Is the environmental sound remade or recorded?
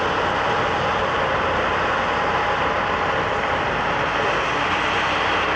recorded